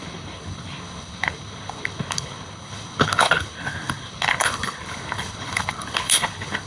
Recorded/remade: remade